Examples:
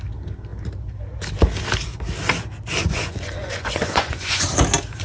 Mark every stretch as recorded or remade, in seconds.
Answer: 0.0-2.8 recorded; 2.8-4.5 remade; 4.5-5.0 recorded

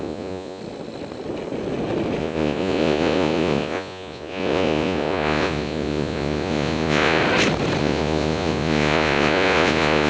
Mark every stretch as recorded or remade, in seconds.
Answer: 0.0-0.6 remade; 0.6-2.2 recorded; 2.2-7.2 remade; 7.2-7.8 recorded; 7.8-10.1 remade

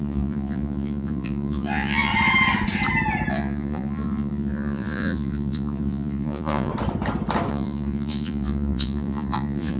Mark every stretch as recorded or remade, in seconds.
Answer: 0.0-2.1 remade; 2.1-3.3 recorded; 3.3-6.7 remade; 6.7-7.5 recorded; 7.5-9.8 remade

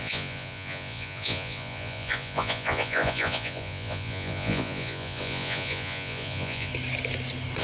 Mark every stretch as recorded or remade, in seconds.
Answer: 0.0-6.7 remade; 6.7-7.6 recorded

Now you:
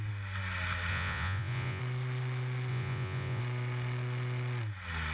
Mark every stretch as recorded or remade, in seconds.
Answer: 0.0-0.9 recorded; 0.9-1.8 remade; 1.8-2.7 recorded; 2.7-3.4 remade; 3.4-5.1 recorded

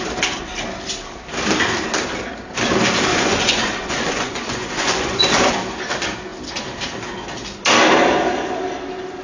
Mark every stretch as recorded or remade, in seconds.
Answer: 0.0-3.1 recorded; 3.1-5.2 remade; 5.2-9.2 recorded

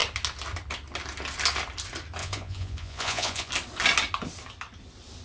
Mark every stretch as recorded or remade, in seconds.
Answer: 0.0-2.2 recorded; 2.2-3.5 remade; 3.5-5.2 recorded

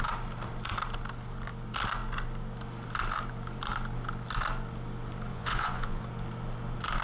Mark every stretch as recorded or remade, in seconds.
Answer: 0.0-5.3 recorded; 5.3-6.0 remade; 6.0-7.0 recorded